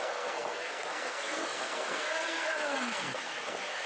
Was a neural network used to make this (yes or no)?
yes